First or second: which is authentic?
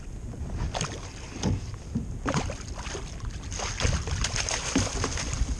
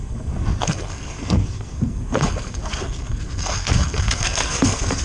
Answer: first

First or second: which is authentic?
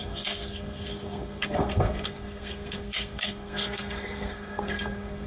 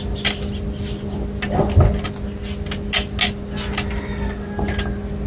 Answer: second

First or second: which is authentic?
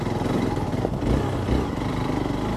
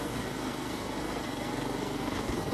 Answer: first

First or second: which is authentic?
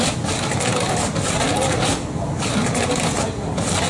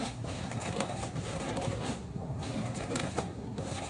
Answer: first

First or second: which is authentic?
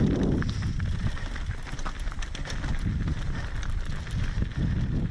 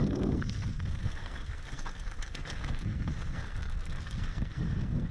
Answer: first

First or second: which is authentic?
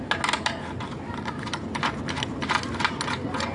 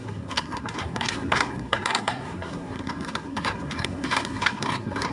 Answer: first